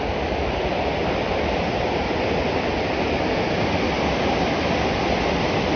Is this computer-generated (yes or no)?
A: no